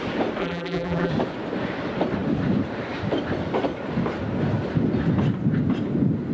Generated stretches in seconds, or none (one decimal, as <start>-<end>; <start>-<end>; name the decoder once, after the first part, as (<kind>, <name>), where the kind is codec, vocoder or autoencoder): 0.4-1.1 (vocoder, BigVGAN v2)